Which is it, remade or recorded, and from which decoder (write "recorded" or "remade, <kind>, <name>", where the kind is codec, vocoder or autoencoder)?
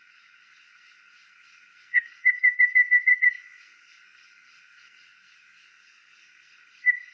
remade, codec, SNAC